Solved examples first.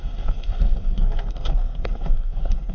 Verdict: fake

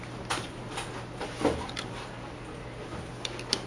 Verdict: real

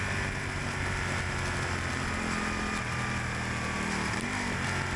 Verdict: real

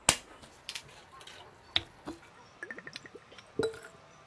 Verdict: real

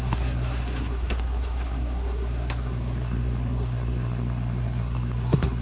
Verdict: fake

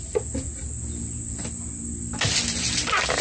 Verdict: real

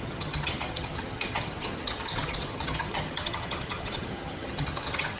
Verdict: fake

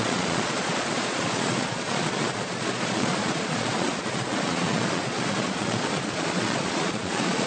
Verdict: fake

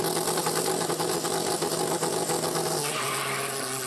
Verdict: real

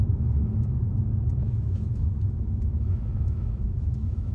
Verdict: fake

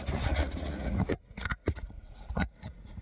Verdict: fake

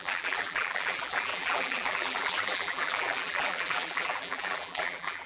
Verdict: fake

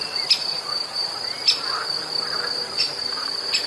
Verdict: real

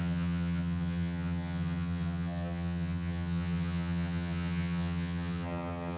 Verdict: fake